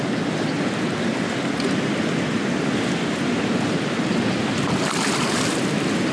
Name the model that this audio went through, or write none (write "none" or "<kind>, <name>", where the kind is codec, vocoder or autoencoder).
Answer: none